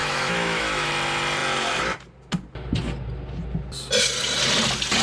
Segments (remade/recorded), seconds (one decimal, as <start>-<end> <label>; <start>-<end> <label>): 0.0-0.9 remade; 0.9-5.0 recorded